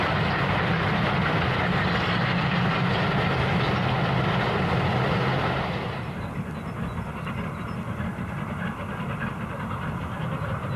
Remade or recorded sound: recorded